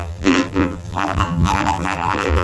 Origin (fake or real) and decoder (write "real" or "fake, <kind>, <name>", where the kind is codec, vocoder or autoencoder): fake, vocoder, BigVGAN v2